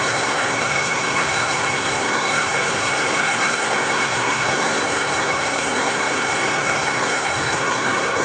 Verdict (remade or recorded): remade